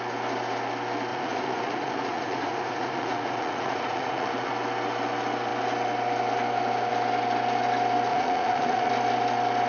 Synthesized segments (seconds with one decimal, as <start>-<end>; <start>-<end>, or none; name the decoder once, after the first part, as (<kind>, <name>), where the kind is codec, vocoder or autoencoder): 1.1-4.5 (vocoder, Vocos); 8.1-8.9